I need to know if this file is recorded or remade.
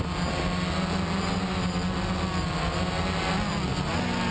recorded